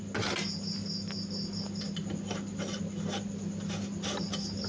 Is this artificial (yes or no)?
no